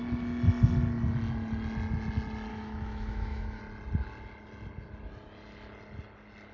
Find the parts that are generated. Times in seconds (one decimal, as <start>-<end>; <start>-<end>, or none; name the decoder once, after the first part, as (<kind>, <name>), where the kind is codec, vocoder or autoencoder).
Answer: 2.5-3.6 (autoencoder, DAC-VAE)